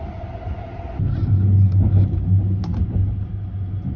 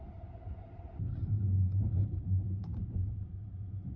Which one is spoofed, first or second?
second